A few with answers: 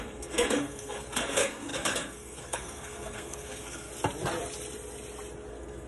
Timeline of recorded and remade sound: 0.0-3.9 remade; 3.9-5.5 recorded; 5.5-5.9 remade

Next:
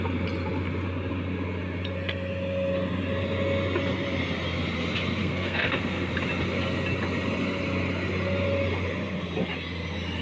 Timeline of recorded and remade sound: 0.0-5.2 recorded; 5.2-6.1 remade; 6.1-10.2 recorded

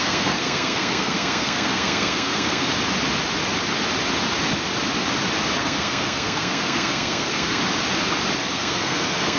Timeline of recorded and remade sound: 0.0-2.7 remade; 2.7-5.6 recorded; 5.6-7.6 remade; 7.6-8.4 recorded; 8.4-9.4 remade

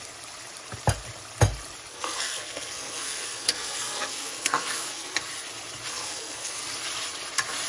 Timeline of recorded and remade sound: 0.0-1.9 recorded; 1.9-5.2 remade; 5.2-5.9 recorded; 5.9-6.6 remade; 6.6-7.7 recorded

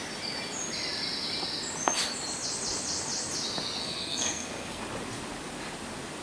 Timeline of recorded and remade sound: 0.0-3.8 recorded; 3.8-4.8 remade; 4.8-6.2 recorded

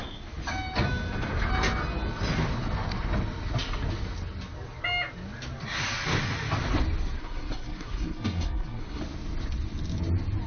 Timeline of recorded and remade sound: 0.0-7.2 recorded; 7.2-9.0 remade; 9.0-10.5 recorded

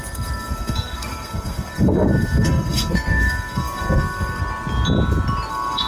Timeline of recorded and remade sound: 0.0-4.4 remade; 4.4-5.5 recorded; 5.5-5.9 remade

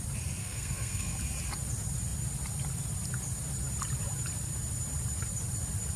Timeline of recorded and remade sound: 0.0-0.4 recorded; 0.4-1.2 remade; 1.2-6.0 recorded